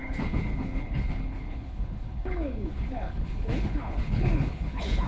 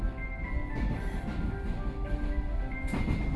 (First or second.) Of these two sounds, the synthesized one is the first